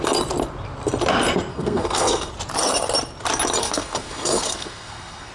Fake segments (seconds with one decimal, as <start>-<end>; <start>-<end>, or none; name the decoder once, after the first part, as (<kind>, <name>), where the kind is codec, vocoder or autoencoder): 1.5-2.3 (codec, SNAC); 3.6-5.3